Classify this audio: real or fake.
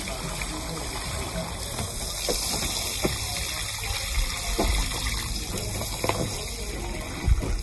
real